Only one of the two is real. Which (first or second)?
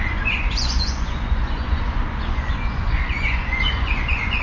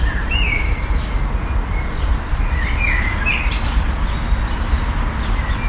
second